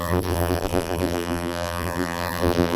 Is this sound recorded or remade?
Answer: remade